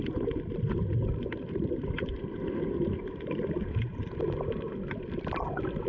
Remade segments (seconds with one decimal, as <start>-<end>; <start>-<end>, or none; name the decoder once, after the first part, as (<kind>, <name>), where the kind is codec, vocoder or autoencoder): 0.0-5.9 (vocoder, BigVGAN v2)